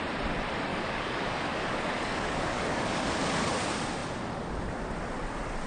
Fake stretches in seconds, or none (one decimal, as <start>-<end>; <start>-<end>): 0.7-3.5